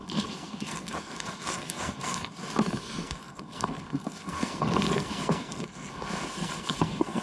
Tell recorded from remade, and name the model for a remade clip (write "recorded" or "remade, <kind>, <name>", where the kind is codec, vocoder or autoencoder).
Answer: remade, codec, SNAC